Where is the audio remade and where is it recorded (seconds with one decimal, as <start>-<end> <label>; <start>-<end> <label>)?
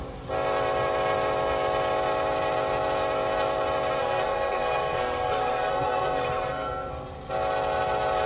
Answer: 0.0-4.0 recorded; 4.0-6.9 remade; 6.9-8.3 recorded